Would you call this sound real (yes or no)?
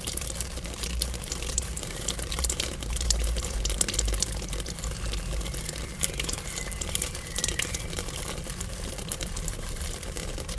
no